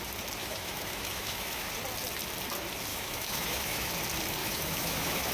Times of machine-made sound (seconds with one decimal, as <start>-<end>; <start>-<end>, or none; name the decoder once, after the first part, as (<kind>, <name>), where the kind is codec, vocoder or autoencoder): 0.4-1.7 (autoencoder, DAC-VAE); 2.9-3.9; 4.4-5.3